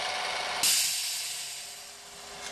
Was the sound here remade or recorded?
recorded